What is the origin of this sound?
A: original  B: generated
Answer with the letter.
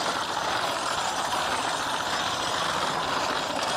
A